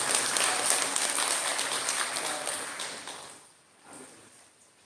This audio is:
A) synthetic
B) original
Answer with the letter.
B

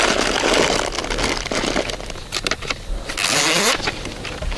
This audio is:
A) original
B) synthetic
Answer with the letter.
A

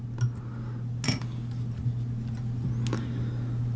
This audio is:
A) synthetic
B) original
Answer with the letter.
B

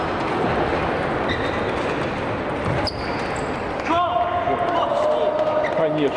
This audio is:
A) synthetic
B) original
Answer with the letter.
B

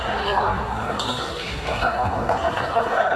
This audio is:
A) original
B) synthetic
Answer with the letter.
B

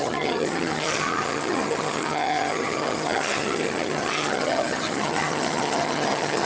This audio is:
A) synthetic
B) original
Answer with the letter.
A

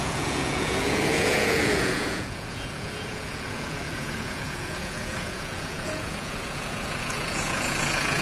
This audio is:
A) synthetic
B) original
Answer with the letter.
A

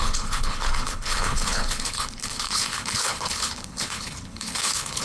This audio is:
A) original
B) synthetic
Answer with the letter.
B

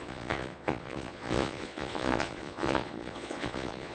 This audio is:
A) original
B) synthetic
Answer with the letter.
B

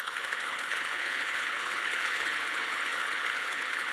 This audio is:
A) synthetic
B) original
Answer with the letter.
A